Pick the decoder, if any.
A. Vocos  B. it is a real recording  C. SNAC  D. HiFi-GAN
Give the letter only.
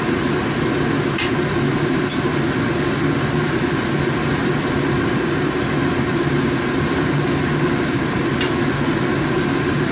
B